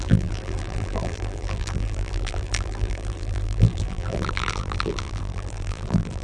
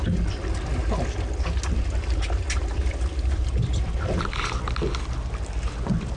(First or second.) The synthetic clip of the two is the first